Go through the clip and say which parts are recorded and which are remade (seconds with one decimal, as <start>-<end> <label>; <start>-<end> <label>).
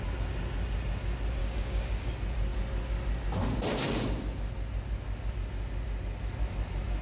0.0-1.4 recorded; 1.4-2.1 remade; 2.1-7.0 recorded